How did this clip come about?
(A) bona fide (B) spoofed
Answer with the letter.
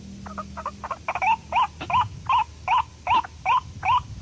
A